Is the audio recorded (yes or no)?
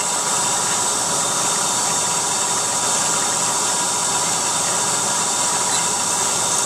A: yes